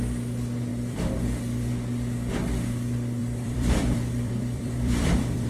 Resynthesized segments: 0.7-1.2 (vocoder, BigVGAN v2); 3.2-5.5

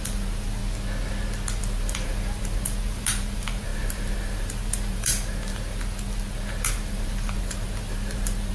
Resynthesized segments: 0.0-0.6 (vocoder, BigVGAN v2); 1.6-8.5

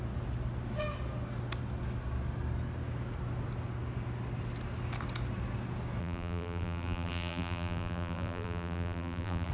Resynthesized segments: 6.0-9.5 (vocoder, BigVGAN v2)